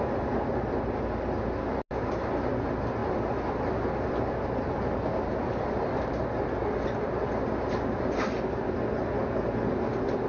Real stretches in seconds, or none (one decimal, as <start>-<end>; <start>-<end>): 0.0-10.3